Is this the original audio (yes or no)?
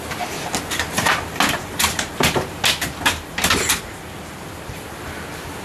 yes